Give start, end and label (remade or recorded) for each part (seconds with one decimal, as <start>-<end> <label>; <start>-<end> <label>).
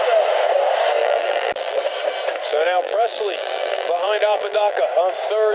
0.0-1.0 recorded; 1.0-1.8 remade; 1.8-2.5 recorded; 2.5-4.8 remade; 4.8-5.5 recorded